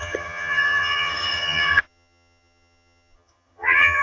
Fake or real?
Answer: fake